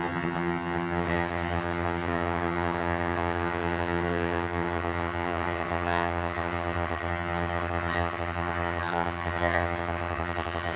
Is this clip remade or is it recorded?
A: remade